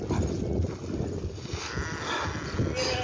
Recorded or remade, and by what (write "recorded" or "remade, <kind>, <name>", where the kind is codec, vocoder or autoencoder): recorded